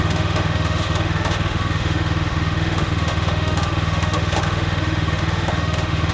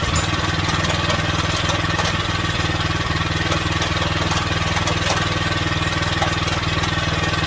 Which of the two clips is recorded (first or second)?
second